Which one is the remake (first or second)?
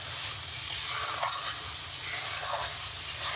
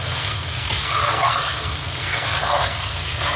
second